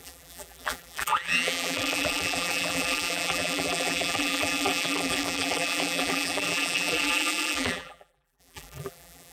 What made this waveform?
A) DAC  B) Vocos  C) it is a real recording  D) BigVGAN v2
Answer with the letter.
D